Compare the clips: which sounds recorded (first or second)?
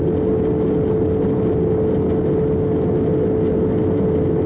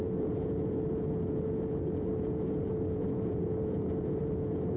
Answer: first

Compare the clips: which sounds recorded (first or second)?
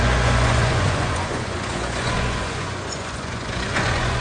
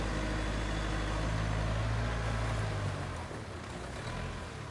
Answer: second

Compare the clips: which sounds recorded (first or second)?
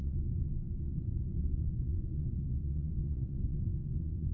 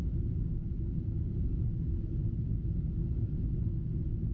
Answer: second